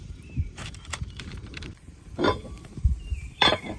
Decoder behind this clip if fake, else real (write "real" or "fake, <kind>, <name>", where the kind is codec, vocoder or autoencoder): fake, vocoder, BigVGAN v2